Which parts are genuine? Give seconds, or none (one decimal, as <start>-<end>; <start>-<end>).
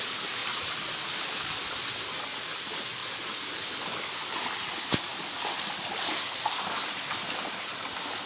0.0-0.4; 1.1-8.3